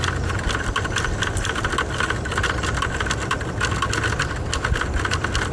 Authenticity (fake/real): real